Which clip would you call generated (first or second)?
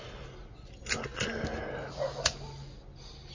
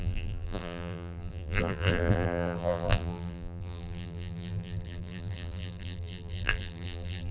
second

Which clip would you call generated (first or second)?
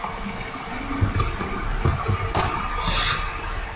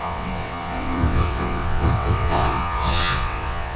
second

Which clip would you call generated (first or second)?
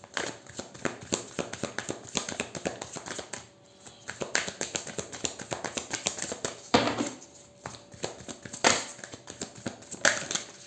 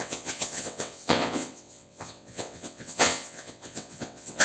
second